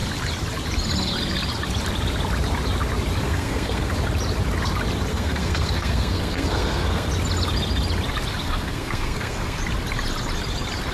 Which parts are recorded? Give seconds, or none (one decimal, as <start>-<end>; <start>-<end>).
0.0-3.2; 3.9-5.1; 7.1-8.4; 9.6-10.9